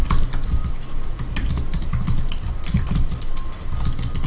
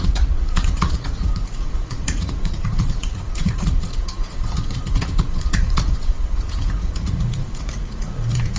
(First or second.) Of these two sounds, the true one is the first